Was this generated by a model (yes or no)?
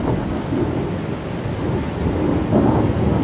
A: no